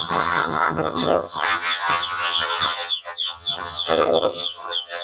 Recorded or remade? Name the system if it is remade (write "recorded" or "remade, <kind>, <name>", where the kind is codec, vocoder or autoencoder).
remade, vocoder, HiFi-GAN